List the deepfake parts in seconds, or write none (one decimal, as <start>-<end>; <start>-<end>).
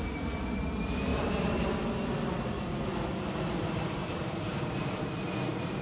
1.1-1.8; 4.0-5.1